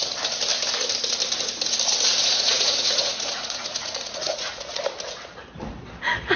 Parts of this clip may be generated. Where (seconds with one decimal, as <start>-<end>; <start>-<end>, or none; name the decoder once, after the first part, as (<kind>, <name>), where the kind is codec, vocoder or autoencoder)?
2.2-4.8 (vocoder, Vocos)